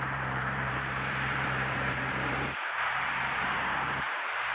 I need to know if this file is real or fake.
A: fake